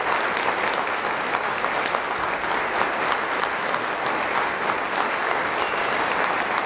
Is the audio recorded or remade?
recorded